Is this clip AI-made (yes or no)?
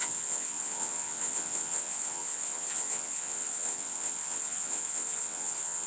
yes